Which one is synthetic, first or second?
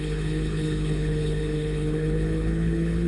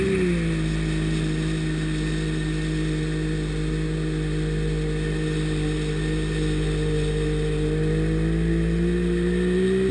first